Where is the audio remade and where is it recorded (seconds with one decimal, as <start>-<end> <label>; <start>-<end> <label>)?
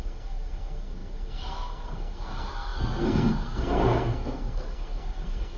0.0-5.6 remade